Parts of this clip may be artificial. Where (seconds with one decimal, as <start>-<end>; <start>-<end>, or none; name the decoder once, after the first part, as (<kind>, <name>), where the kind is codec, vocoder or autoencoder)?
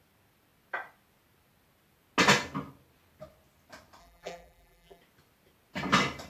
4.0-5.0 (vocoder, BigVGAN v2)